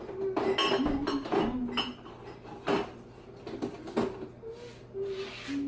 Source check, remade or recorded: recorded